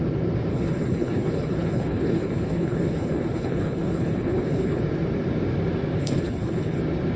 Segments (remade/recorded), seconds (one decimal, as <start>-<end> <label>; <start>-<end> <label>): 0.0-0.5 recorded; 0.5-4.8 remade; 4.8-6.0 recorded; 6.0-6.8 remade; 6.8-7.2 recorded

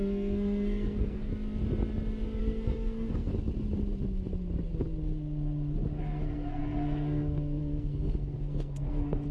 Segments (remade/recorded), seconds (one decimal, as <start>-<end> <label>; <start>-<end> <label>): 0.0-1.3 remade; 1.3-2.4 recorded; 2.4-3.3 remade; 3.3-6.0 recorded; 6.0-9.3 remade